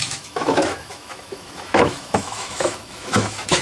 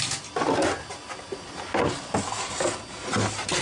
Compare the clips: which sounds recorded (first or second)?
second